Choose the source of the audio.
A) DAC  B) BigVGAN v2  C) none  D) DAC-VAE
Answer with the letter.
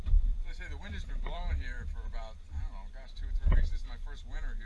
B